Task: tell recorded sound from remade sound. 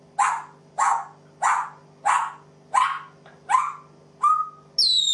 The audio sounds recorded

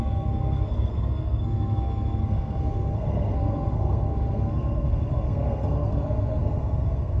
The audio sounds remade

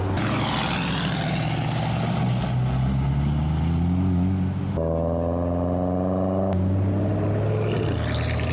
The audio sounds recorded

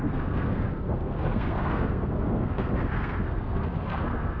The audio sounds remade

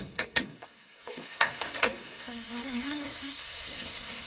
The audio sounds remade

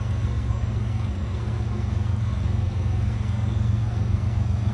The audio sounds remade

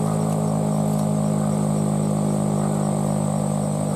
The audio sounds recorded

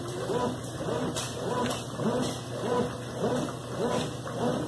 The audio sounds recorded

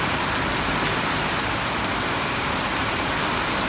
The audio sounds recorded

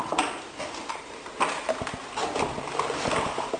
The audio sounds recorded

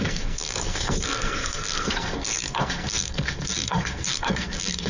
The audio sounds remade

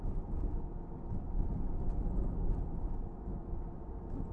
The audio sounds recorded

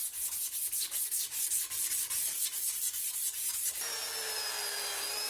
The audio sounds recorded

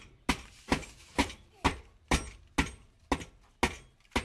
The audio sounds recorded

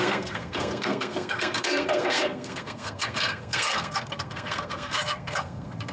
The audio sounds remade